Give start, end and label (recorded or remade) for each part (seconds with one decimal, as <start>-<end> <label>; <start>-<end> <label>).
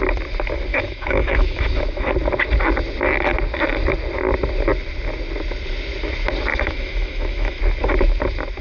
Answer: 0.0-0.7 recorded; 0.7-2.1 remade; 2.1-6.5 recorded; 6.5-7.6 remade; 7.6-8.6 recorded